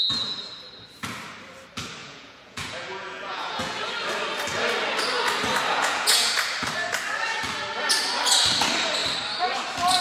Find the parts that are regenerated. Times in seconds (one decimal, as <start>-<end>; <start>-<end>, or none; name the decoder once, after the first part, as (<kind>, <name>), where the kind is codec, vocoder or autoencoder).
2.0-3.9 (vocoder, Vocos); 5.7-6.3